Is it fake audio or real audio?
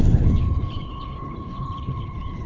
fake